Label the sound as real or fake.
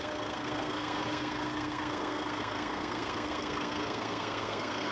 fake